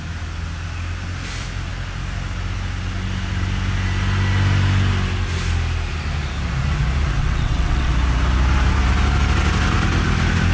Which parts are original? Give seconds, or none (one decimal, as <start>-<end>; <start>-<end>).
0.0-7.2; 7.9-10.5